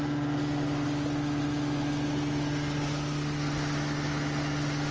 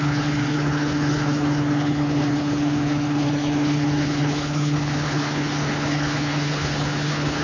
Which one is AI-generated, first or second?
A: second